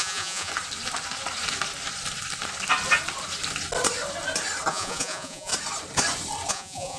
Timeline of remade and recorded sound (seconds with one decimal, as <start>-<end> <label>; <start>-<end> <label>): 0.0-0.5 remade; 0.5-4.7 recorded; 4.7-5.5 remade; 5.5-6.5 recorded; 6.5-7.0 remade